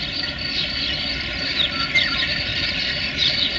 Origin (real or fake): real